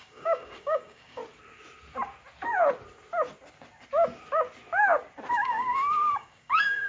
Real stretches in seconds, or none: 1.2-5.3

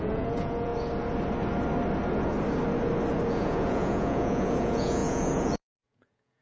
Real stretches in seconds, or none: 0.7-3.3

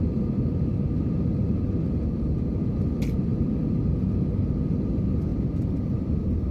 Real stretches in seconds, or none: 0.0-5.3

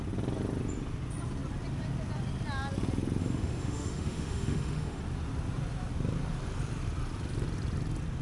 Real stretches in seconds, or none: 0.0-3.2; 5.0-8.2

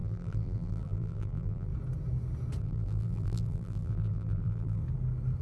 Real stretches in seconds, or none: 1.7-2.6; 4.8-5.4

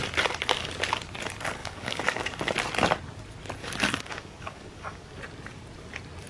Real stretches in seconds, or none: 0.0-1.6; 2.4-3.6; 5.2-6.3

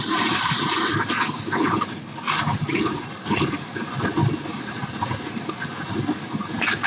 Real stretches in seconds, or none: 0.0-6.9